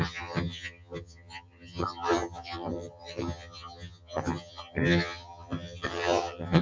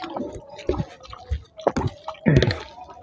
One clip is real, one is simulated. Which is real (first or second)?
second